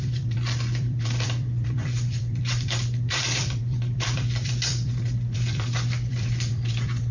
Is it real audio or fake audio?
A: fake